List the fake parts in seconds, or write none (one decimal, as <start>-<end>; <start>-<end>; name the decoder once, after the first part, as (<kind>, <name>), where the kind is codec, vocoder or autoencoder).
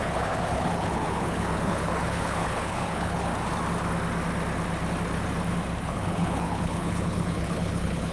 0.0-3.3 (codec, HILCodec); 5.8-8.1